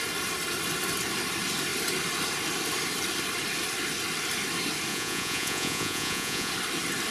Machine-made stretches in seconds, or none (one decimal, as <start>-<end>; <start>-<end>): 4.9-6.5